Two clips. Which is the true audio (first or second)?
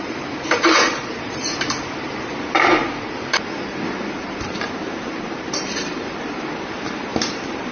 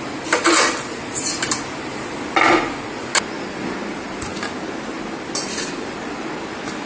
second